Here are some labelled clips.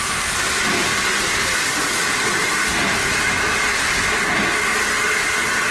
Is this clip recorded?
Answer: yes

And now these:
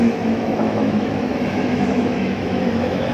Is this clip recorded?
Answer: no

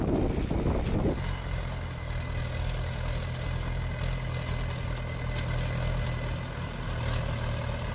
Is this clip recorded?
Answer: yes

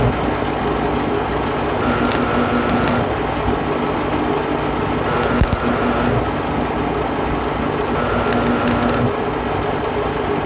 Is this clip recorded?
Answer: yes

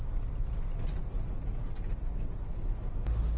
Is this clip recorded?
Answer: yes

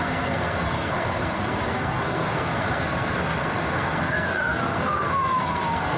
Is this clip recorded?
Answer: no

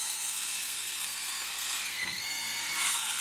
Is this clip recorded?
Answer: no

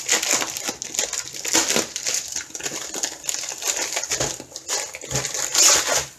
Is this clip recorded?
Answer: yes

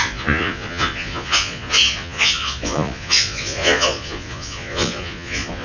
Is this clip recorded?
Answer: no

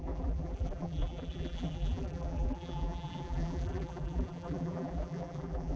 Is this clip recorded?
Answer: no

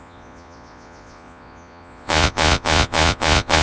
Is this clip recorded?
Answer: no